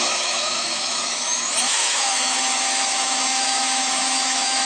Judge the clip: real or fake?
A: fake